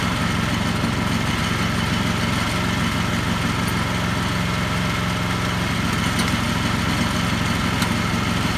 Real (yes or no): yes